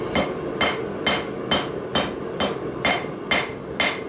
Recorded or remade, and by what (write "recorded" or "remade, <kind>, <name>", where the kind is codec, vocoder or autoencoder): recorded